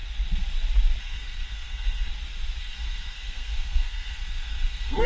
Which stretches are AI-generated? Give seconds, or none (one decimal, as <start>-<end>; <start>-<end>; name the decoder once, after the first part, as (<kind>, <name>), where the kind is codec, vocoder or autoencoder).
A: 1.0-2.1 (codec, SNAC); 2.6-5.1